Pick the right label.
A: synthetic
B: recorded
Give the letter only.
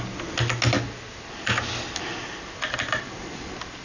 B